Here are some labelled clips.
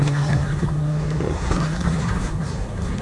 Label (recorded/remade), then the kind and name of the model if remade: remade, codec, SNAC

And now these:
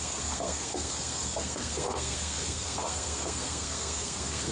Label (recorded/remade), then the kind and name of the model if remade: remade, codec, SNAC